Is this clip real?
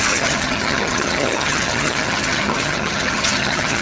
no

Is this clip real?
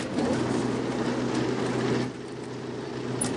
yes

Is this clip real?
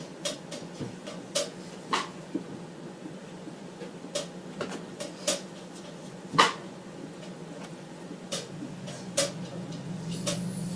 no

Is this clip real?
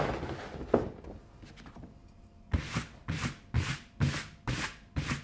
yes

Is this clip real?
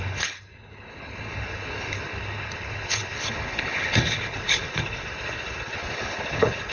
no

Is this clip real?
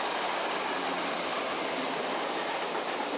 yes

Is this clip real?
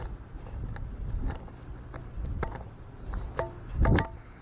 yes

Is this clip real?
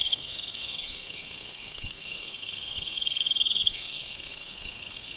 no